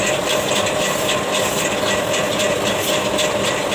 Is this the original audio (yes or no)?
yes